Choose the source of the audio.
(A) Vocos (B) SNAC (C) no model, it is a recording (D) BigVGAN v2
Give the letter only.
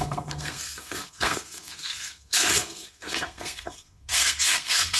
B